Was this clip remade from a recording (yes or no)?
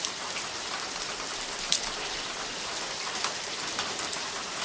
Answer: no